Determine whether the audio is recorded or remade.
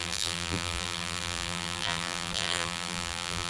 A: remade